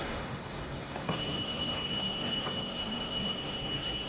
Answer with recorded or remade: remade